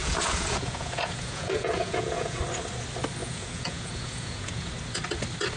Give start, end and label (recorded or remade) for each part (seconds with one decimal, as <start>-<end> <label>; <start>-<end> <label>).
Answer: 0.0-2.4 remade; 2.4-3.2 recorded; 3.2-4.7 remade; 4.7-5.6 recorded